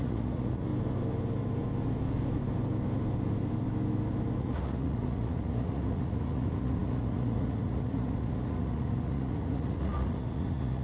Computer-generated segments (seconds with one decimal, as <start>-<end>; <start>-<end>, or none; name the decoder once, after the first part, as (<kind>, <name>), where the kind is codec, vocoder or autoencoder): 0.0-0.7 (vocoder, Vocos); 4.4-10.8